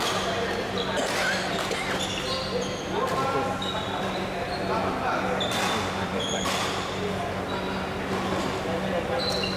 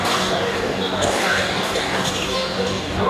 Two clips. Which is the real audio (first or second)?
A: first